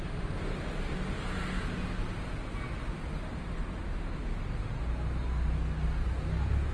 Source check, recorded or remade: recorded